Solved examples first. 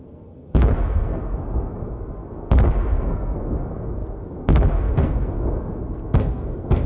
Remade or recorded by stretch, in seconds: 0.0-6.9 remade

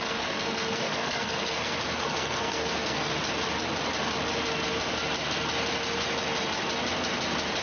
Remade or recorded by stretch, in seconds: 0.0-3.1 remade; 3.1-7.6 recorded

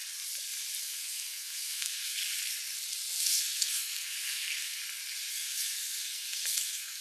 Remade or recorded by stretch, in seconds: 0.0-0.8 recorded; 0.8-2.2 remade; 2.2-3.2 recorded; 3.2-4.8 remade; 4.8-5.3 recorded; 5.3-7.0 remade